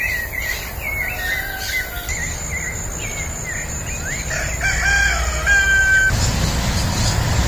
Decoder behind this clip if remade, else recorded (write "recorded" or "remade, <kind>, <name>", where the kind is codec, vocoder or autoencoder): recorded